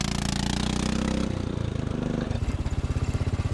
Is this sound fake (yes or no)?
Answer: no